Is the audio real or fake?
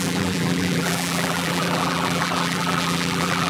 fake